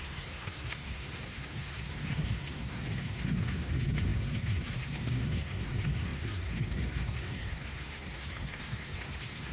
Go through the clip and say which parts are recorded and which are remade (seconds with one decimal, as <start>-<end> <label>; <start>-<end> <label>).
0.0-9.5 remade